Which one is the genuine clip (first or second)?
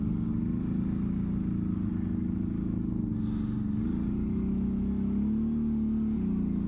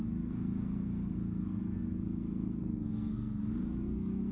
first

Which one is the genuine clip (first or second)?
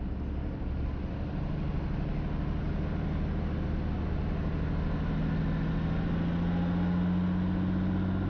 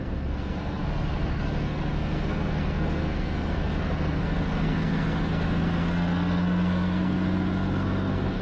first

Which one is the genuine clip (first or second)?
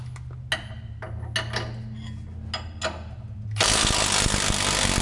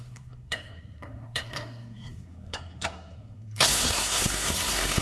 first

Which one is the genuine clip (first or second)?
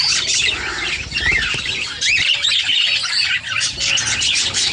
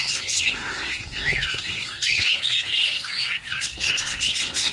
first